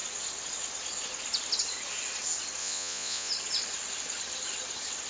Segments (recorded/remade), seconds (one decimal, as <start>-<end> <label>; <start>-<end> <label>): 0.0-2.6 recorded; 2.6-3.3 remade; 3.3-5.1 recorded